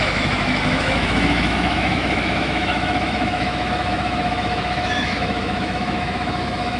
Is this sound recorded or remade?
remade